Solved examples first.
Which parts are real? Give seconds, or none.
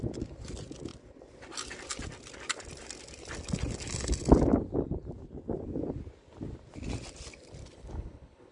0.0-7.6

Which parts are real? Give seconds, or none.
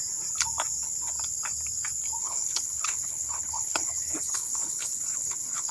0.0-2.2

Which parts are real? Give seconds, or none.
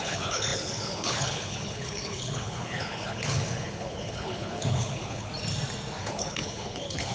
5.3-6.0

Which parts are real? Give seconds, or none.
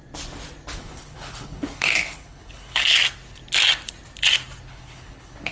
0.0-0.8; 3.0-4.7